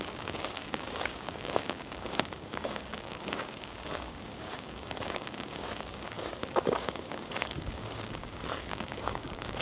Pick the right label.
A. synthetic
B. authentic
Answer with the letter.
A